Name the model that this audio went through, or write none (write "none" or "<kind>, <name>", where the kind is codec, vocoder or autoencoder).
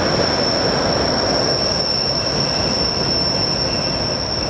none